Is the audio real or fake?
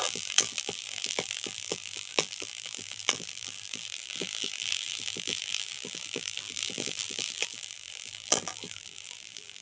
fake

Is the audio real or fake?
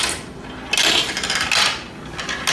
real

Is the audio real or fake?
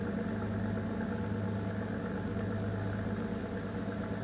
real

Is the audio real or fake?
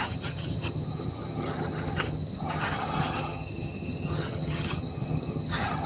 fake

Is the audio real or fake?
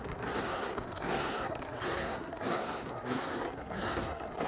fake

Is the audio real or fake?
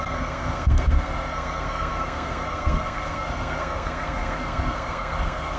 fake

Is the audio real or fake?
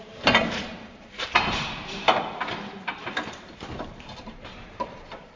fake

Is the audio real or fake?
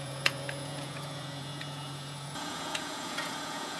fake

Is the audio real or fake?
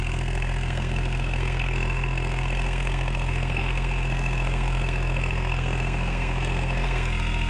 fake